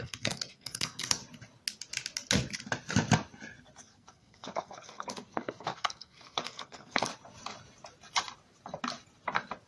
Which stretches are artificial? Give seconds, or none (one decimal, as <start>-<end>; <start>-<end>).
0.0-1.2; 3.8-7.1